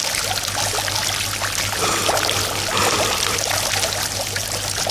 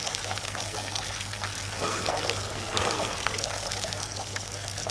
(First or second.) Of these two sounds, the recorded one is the first